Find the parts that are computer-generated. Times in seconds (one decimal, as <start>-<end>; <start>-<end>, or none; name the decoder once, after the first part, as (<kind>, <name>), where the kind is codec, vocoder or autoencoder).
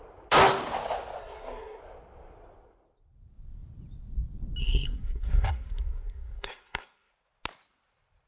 1.2-1.8 (codec, SNAC); 4.6-7.1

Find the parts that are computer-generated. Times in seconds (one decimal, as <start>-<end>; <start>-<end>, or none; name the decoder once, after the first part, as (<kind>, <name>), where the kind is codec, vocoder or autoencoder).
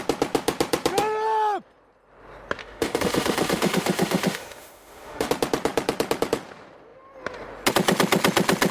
2.6-5.3 (autoencoder, DAC-VAE)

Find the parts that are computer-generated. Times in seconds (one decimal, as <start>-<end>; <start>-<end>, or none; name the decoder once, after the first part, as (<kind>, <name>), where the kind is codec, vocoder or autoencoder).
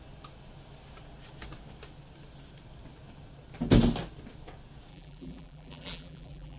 4.9-6.6 (vocoder, BigVGAN v2)